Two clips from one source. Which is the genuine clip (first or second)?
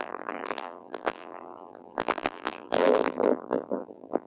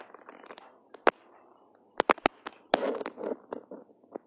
second